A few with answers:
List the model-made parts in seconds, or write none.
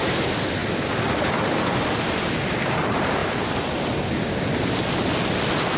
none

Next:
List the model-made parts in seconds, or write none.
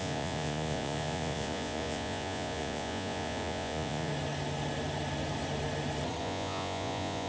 0.0-4.1 (vocoder, Vocos); 6.2-7.3